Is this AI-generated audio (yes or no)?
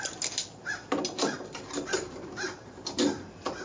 no